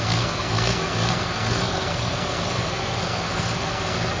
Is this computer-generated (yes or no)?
yes